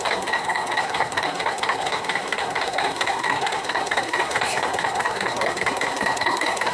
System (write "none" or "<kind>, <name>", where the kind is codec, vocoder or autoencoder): codec, SNAC